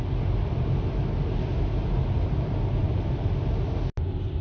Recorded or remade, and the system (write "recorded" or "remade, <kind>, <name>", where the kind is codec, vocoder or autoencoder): recorded